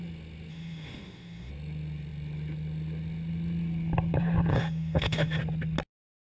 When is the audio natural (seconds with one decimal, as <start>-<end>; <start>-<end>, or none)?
0.0-0.5; 1.5-4.5; 5.4-6.3